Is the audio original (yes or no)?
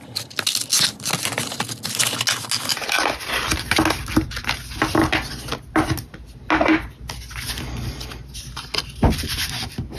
yes